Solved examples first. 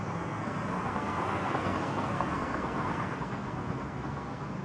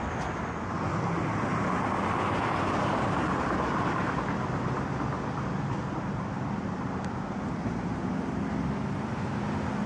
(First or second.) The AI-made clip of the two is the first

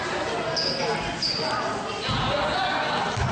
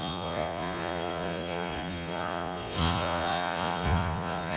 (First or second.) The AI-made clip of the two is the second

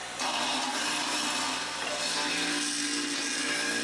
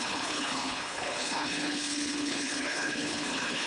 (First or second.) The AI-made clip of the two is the second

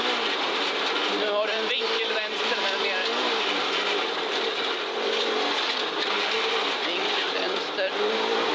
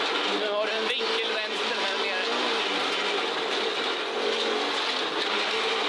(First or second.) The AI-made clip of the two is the first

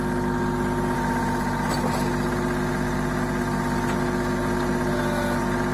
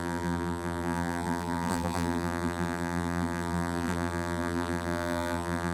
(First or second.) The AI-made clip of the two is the second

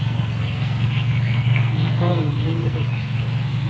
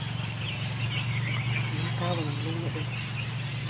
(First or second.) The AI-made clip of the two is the first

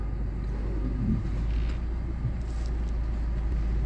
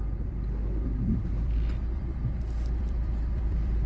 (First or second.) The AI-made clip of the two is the second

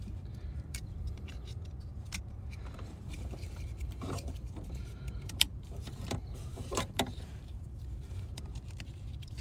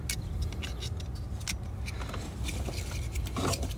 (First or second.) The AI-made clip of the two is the first